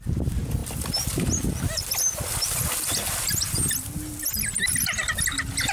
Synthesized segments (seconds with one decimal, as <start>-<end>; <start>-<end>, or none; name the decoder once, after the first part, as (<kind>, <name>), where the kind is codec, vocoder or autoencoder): none